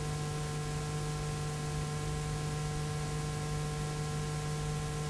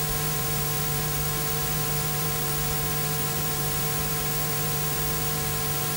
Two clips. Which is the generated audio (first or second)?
second